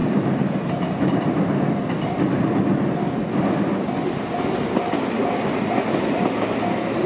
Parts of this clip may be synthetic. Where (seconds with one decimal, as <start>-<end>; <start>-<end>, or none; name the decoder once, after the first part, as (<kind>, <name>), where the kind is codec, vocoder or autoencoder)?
0.0-1.3 (vocoder, BigVGAN v2)